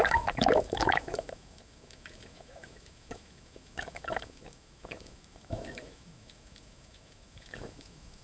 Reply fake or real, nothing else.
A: fake